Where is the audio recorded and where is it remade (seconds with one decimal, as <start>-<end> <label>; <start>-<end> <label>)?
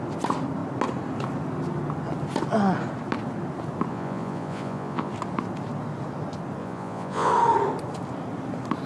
0.0-3.9 recorded; 3.9-5.1 remade; 5.1-6.6 recorded; 6.6-7.3 remade; 7.3-8.9 recorded